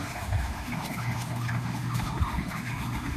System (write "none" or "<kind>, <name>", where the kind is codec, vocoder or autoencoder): autoencoder, DAC-VAE